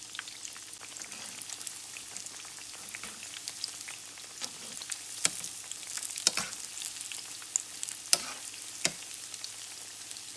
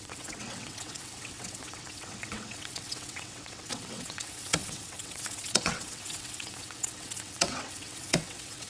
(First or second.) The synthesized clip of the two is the second